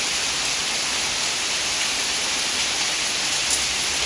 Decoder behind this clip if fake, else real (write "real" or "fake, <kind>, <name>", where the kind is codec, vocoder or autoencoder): real